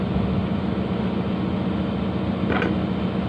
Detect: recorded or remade recorded